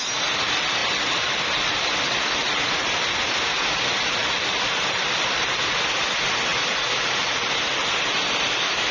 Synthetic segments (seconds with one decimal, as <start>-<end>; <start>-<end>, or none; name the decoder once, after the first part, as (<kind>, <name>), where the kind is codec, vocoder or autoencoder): 0.8-1.4 (vocoder, BigVGAN v2); 4.2-5.6; 6.5-8.0